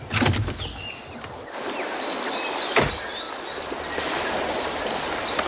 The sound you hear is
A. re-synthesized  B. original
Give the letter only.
B